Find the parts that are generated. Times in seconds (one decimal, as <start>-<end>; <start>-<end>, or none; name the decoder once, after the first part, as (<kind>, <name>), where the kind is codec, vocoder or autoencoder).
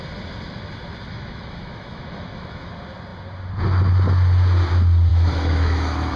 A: 1.1-2.7 (autoencoder, DAC-VAE); 5.1-6.2